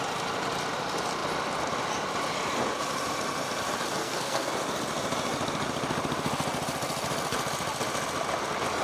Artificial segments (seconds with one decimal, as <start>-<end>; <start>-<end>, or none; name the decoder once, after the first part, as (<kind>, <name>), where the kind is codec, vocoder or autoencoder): 4.0-4.5 (codec, SNAC)